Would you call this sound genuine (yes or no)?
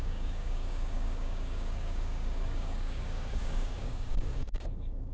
no